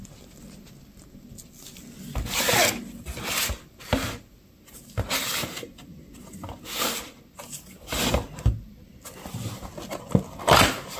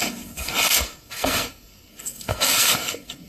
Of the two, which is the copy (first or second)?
second